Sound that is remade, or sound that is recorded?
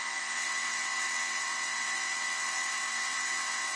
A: remade